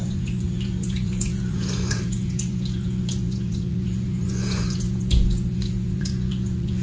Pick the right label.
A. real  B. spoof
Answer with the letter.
B